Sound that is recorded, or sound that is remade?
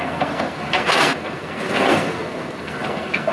remade